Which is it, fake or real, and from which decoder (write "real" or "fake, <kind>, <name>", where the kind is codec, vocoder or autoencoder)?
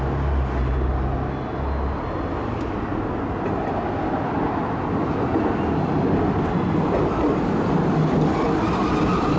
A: real